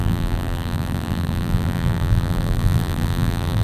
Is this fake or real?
fake